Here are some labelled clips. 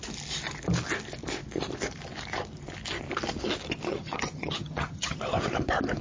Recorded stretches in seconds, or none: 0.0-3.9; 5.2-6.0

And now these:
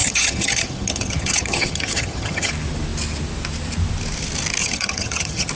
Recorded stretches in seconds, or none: 2.5-4.6